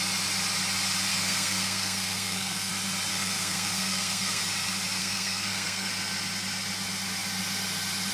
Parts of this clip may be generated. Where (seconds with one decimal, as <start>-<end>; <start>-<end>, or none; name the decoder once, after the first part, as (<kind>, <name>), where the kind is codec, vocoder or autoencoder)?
1.1-2.7 (codec, SNAC); 3.1-4.4; 5.0-5.9